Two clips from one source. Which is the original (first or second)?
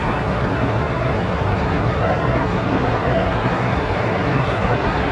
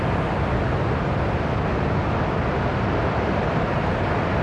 second